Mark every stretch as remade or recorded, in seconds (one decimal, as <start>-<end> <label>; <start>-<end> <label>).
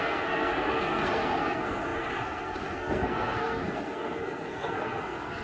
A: 0.0-5.4 remade